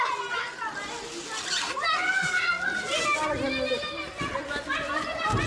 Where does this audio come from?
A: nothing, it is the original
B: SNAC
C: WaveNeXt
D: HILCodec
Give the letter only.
A